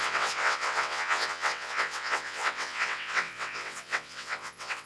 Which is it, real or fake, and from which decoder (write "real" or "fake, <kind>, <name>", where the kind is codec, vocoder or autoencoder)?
fake, vocoder, WaveNeXt